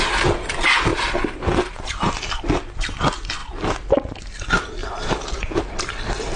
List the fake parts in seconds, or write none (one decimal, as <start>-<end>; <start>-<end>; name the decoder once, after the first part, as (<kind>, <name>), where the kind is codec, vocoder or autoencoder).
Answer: 0.9-2.4 (vocoder, BigVGAN v2); 4.8-5.6